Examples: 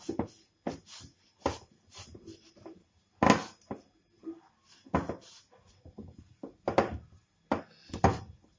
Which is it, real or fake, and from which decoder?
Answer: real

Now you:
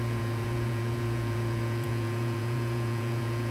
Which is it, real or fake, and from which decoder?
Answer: fake, vocoder, Vocos